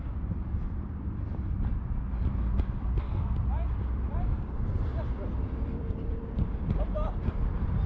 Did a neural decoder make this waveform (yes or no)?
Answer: yes